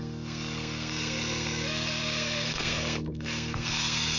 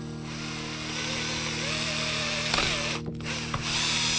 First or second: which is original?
second